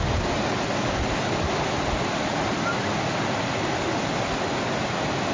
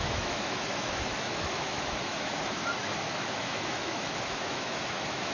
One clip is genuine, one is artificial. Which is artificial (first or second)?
second